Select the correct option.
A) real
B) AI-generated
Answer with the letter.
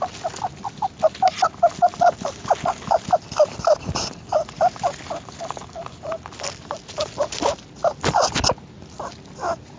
A